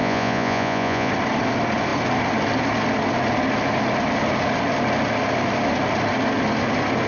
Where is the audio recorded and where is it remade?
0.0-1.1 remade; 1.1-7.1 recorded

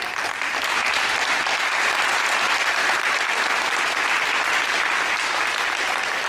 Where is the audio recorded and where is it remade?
0.0-6.3 recorded

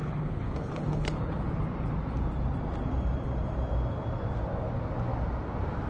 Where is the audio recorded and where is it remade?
0.0-1.4 remade; 1.4-5.9 recorded

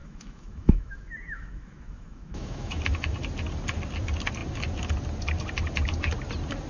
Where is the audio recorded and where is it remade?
0.0-2.8 remade; 2.8-6.7 recorded

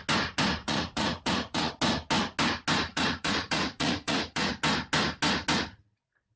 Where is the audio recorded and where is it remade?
0.0-0.6 recorded; 0.6-1.7 remade; 1.7-2.9 recorded; 2.9-4.5 remade; 4.5-6.4 recorded

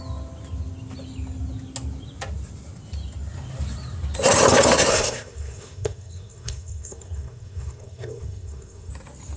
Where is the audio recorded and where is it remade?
0.0-4.9 recorded; 4.9-8.9 remade; 8.9-9.4 recorded

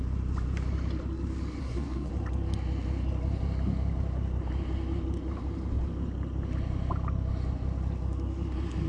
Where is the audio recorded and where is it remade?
0.0-1.6 recorded; 1.6-2.1 remade; 2.1-8.9 recorded

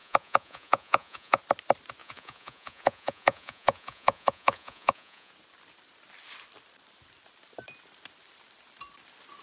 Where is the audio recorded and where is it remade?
0.0-1.4 remade; 1.4-2.0 recorded; 2.0-5.3 remade; 5.3-9.4 recorded